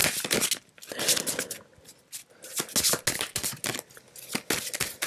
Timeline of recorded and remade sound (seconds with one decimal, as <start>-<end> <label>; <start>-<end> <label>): 0.0-5.1 recorded

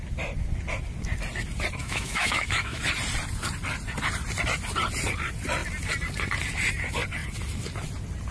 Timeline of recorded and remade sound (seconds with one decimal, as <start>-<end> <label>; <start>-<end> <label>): 0.0-1.8 recorded; 1.8-2.8 remade; 2.8-8.3 recorded

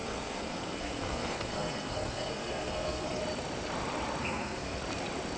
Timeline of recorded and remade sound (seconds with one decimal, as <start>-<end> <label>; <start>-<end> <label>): 0.0-3.2 remade; 3.2-4.2 recorded; 4.2-4.8 remade; 4.8-5.4 recorded

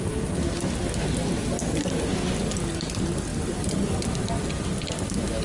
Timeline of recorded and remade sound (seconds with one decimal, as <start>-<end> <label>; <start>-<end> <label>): 0.0-5.4 recorded